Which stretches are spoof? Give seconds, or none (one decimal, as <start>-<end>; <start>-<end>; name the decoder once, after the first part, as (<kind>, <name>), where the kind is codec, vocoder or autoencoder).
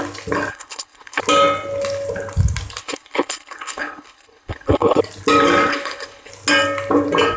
0.5-1.2 (codec, HILCodec); 2.8-5.0; 5.7-6.3